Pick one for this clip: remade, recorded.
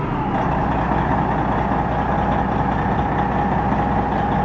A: recorded